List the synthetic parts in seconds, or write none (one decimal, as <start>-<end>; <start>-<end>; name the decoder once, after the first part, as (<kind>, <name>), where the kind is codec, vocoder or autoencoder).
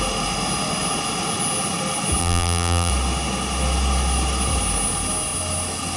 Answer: 2.2-2.9 (vocoder, BigVGAN v2)